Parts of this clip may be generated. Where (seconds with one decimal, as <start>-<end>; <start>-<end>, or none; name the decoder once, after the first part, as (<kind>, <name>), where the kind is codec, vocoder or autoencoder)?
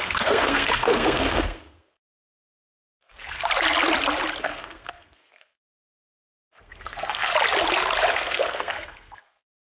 0.0-3.4 (codec, SNAC); 4.4-7.3; 8.1-9.8